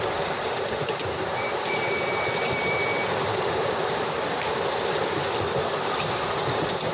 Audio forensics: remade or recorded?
remade